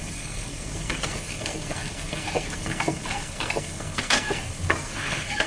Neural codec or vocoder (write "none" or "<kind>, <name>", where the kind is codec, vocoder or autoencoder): codec, SNAC